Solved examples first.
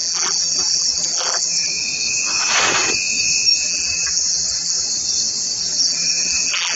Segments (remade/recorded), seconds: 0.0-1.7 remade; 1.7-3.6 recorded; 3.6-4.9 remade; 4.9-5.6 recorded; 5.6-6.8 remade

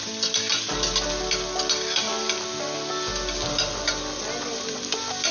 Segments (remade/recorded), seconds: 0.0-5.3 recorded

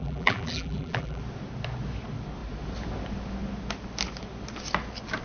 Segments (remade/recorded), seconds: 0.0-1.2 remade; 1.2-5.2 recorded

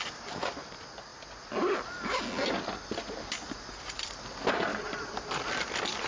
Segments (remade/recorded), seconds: 0.0-4.7 recorded; 4.7-6.1 remade

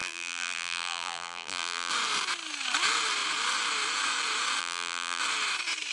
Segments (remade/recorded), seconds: 0.0-1.9 remade; 1.9-4.6 recorded; 4.6-5.2 remade; 5.2-5.9 recorded

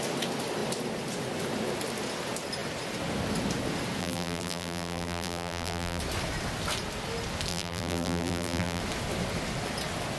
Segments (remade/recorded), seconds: 0.0-4.0 recorded; 4.0-6.0 remade; 6.0-7.5 recorded; 7.5-8.8 remade; 8.8-10.2 recorded

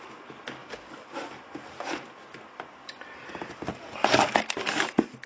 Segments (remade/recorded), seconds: 0.0-0.6 recorded; 0.6-2.1 remade; 2.1-2.8 recorded; 2.8-3.6 remade; 3.6-5.3 recorded